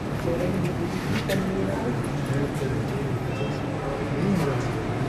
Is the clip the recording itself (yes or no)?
yes